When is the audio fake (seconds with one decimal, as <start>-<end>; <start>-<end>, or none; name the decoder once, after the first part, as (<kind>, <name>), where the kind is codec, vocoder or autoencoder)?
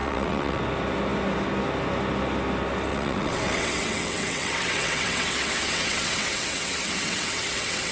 0.0-0.6 (vocoder, WaveNeXt); 2.9-7.9